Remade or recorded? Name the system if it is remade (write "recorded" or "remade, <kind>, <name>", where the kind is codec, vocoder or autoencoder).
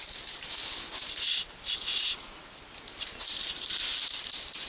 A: recorded